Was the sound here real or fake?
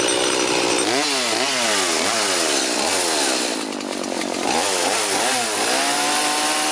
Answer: real